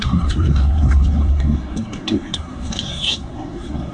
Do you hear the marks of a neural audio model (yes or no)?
yes